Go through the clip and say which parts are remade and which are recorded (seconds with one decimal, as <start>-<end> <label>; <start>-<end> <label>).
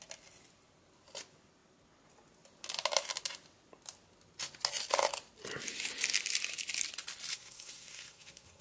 0.0-7.3 recorded; 7.3-8.6 remade